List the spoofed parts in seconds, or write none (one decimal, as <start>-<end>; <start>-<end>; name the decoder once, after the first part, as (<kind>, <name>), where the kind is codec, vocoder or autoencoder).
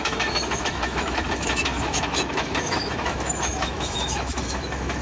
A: 0.0-5.0 (autoencoder, DAC-VAE)